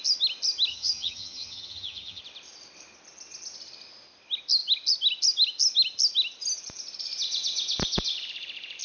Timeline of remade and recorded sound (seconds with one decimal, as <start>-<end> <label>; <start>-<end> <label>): 0.0-0.7 recorded; 0.7-2.2 remade; 2.2-8.8 recorded